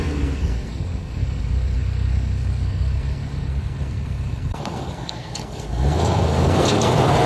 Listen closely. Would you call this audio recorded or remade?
remade